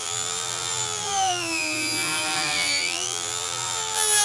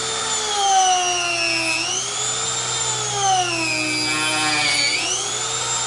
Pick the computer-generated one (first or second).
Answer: first